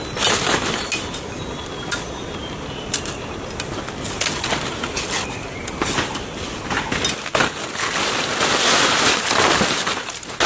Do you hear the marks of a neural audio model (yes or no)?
no